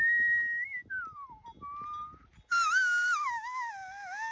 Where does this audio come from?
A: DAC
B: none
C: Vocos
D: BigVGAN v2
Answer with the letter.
B